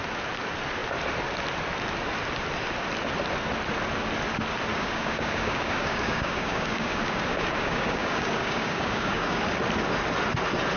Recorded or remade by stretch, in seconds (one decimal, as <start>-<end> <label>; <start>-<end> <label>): 0.0-4.7 recorded; 4.7-9.4 remade; 9.4-10.8 recorded